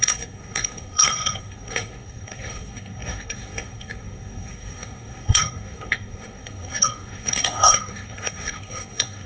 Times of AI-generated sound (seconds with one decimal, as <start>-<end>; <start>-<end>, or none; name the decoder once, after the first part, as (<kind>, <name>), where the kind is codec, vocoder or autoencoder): 0.0-9.3 (codec, SNAC)